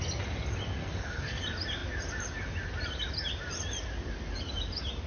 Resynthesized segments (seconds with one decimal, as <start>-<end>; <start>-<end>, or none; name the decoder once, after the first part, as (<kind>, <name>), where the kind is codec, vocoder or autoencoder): 0.8-1.4 (codec, SNAC)